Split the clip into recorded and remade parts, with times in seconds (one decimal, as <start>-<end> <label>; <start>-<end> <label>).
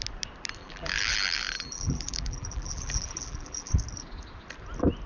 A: 0.0-0.6 recorded; 0.6-3.7 remade; 3.7-5.1 recorded